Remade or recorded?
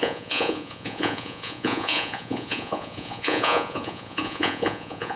remade